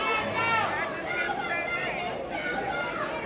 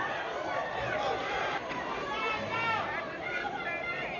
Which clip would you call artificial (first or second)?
second